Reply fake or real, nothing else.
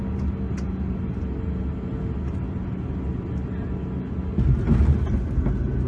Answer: real